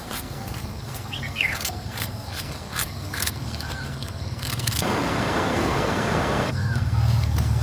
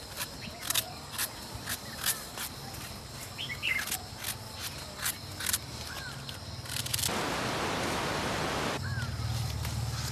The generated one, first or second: first